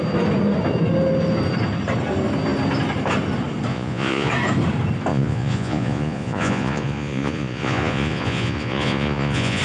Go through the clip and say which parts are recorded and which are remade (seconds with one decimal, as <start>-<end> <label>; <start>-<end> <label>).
0.0-3.7 recorded; 3.7-4.3 remade; 4.3-5.1 recorded; 5.1-9.6 remade